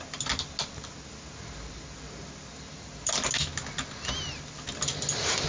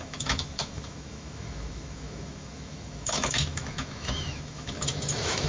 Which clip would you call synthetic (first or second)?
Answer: second